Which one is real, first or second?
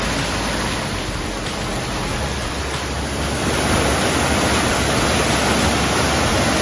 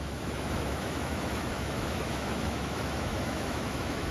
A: first